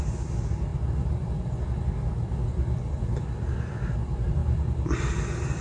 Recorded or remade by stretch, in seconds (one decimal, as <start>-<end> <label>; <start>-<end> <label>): 0.0-5.6 recorded